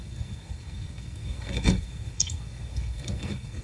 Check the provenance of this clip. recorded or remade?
remade